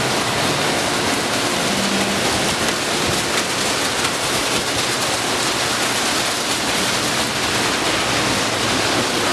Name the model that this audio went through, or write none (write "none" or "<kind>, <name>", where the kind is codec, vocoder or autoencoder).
none